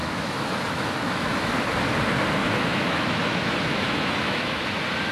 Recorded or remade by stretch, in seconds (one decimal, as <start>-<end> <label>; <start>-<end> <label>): 0.0-1.5 remade; 1.5-2.4 recorded; 2.4-4.6 remade; 4.6-5.1 recorded